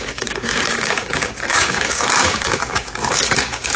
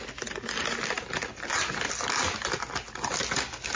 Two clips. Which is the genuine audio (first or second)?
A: second